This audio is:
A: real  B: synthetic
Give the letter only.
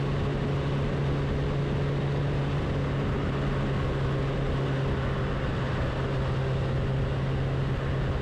A